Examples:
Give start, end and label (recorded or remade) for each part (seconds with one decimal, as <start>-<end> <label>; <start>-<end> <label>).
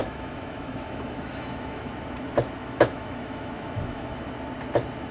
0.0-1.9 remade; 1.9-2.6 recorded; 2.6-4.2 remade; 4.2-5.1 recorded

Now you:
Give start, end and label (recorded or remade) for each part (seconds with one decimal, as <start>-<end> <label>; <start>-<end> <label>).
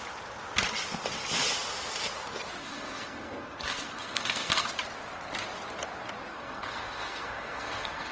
0.0-2.6 recorded; 2.6-4.7 remade; 4.7-6.3 recorded; 6.3-8.1 remade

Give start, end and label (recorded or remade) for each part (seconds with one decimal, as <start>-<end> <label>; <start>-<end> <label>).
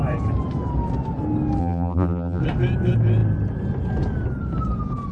0.0-1.6 recorded; 1.6-2.4 remade; 2.4-5.1 recorded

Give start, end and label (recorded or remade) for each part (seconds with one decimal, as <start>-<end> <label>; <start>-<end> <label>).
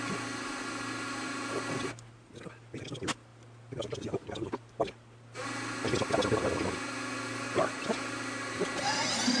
0.0-9.4 recorded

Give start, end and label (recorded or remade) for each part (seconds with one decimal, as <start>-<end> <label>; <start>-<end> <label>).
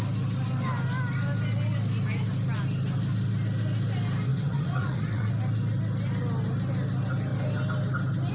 0.0-4.3 recorded; 4.3-5.3 remade; 5.3-8.3 recorded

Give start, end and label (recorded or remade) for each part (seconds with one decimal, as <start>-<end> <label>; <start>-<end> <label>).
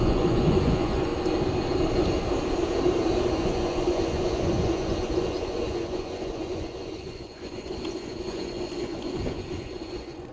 0.0-1.1 remade; 1.1-3.3 recorded; 3.3-10.3 remade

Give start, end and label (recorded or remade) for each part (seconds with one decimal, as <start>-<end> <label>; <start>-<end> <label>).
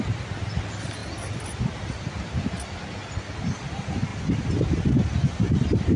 0.0-6.0 recorded